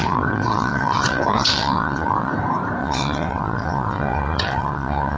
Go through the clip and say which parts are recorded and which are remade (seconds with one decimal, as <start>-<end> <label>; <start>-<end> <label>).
0.0-2.3 remade; 2.3-2.8 recorded; 2.8-5.2 remade